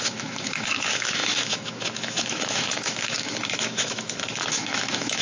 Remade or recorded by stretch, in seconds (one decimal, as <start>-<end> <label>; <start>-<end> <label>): 0.0-5.2 remade

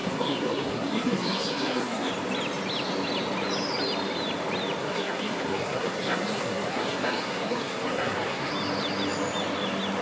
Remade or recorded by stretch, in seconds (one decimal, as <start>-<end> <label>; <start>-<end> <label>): 0.0-2.1 remade; 2.1-4.8 recorded; 4.8-8.5 remade; 8.5-10.0 recorded

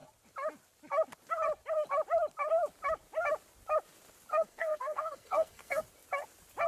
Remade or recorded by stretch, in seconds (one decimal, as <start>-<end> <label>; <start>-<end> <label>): 0.0-4.3 recorded; 4.3-5.8 remade; 5.8-6.7 recorded

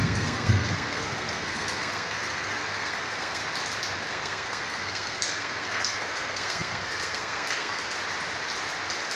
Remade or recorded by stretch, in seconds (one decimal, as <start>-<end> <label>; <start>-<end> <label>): 0.0-3.4 remade; 3.4-4.1 recorded; 4.1-8.0 remade; 8.0-9.2 recorded

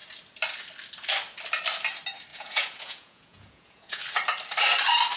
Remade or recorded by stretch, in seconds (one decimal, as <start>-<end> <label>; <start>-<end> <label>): 0.0-2.3 recorded; 2.3-4.0 remade; 4.0-5.2 recorded